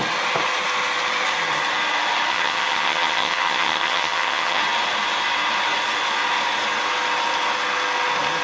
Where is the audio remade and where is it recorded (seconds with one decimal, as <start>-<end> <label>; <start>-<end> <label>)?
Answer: 0.0-2.3 recorded; 2.3-4.6 remade; 4.6-8.4 recorded